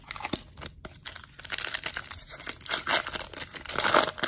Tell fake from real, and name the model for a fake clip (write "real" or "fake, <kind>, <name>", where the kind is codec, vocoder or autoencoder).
real